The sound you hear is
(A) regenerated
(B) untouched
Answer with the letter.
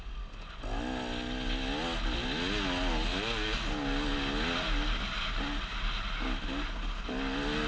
B